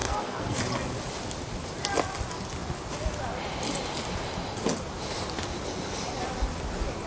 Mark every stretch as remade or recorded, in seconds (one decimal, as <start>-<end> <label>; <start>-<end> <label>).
0.0-0.6 remade; 0.6-7.1 recorded